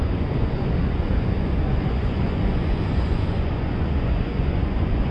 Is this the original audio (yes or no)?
no